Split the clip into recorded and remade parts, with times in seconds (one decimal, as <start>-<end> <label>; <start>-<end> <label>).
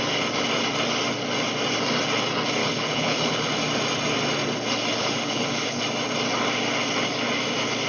0.0-2.6 recorded; 2.6-3.5 remade; 3.5-4.9 recorded; 4.9-5.8 remade; 5.8-7.9 recorded